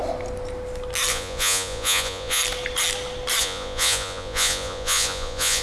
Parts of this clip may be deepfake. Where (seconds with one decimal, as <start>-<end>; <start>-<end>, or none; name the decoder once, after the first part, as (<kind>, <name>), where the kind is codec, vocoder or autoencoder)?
1.1-2.4 (vocoder, Vocos); 3.4-5.6